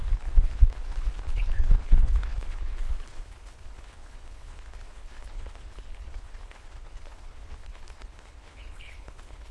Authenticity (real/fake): fake